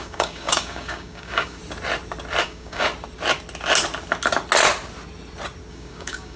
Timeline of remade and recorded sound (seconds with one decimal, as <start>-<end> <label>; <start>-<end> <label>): 0.0-1.6 remade; 1.6-2.4 recorded; 2.4-2.9 remade; 2.9-5.7 recorded; 5.7-6.4 remade